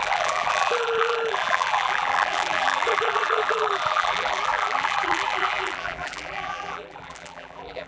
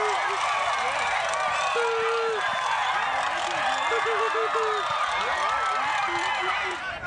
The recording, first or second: second